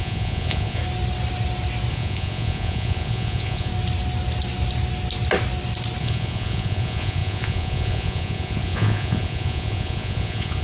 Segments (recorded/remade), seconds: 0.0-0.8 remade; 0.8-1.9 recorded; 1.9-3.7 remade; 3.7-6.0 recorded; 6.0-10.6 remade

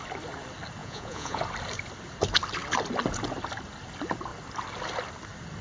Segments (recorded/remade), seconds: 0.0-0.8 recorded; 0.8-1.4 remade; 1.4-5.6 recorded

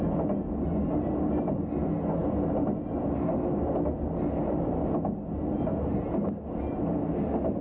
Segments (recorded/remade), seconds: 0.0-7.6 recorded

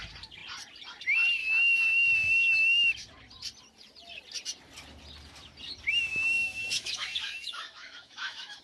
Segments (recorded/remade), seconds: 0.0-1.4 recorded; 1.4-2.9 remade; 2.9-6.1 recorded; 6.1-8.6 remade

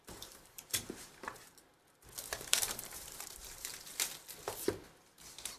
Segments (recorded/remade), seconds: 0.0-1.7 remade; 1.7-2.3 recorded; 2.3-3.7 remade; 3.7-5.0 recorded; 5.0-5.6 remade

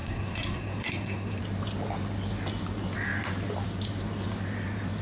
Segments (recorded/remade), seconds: 0.0-1.4 remade; 1.4-5.0 recorded

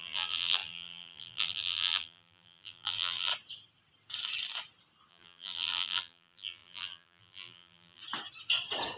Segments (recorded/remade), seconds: 0.0-3.3 remade; 3.3-5.1 recorded; 5.1-8.0 remade; 8.0-9.0 recorded

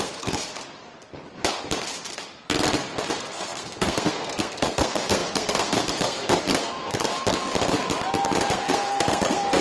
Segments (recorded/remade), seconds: 0.0-0.5 remade; 0.5-3.1 recorded; 3.1-7.1 remade; 7.1-8.5 recorded; 8.5-9.6 remade